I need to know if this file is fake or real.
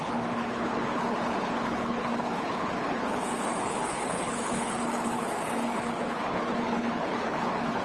fake